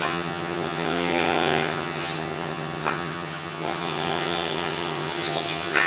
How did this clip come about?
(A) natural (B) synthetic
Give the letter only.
B